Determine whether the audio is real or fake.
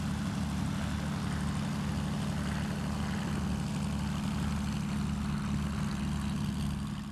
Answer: real